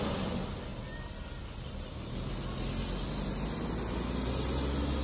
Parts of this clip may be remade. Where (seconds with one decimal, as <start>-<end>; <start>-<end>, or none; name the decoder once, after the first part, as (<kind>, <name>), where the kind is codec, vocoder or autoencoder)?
none